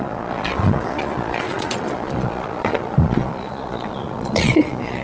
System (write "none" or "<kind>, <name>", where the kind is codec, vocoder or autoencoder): vocoder, Vocos